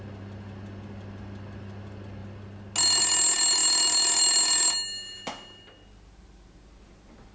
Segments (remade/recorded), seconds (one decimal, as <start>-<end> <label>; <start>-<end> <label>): 0.0-7.3 recorded